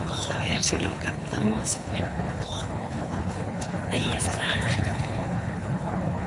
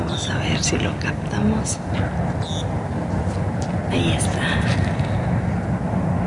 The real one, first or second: second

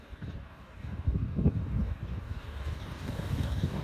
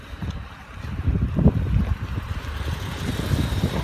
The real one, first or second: second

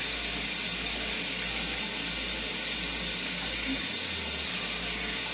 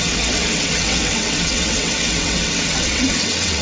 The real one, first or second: first